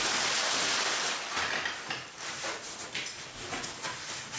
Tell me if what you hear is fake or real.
real